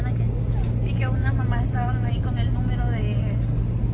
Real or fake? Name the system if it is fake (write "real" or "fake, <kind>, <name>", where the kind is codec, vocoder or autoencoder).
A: real